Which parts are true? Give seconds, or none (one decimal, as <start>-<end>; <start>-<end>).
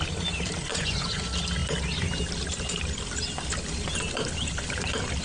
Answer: 0.0-0.7; 1.2-5.2